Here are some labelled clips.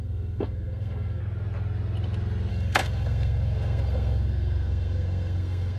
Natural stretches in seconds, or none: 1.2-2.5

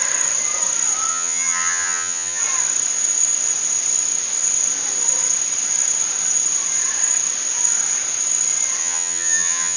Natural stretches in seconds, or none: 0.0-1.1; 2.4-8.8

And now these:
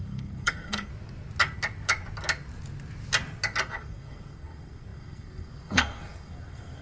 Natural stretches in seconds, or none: 0.9-3.7

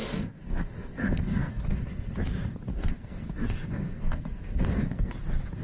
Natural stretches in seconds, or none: 2.1-2.7; 5.1-5.6

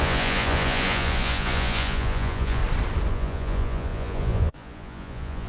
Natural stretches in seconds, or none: 2.6-3.1

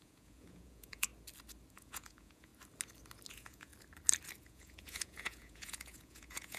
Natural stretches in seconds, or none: 1.1-1.7; 2.5-3.3; 3.7-4.4

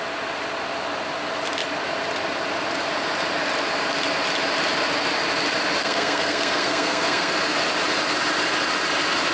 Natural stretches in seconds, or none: 0.0-5.8; 7.3-9.3